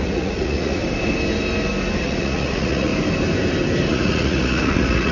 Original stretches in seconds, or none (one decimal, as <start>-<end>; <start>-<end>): 0.8-2.0; 2.9-3.9